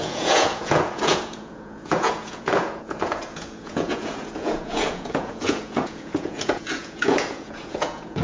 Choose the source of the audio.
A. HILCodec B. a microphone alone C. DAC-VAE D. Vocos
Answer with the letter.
D